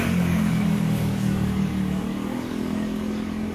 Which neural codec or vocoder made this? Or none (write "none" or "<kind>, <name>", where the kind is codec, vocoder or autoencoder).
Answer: codec, DAC